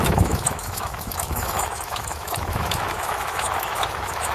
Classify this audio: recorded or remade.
remade